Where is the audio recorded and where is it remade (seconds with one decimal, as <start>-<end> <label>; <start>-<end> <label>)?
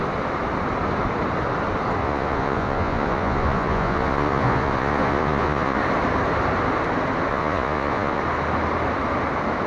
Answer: 0.0-2.0 recorded; 2.0-5.8 remade; 5.8-7.3 recorded; 7.3-8.2 remade; 8.2-9.7 recorded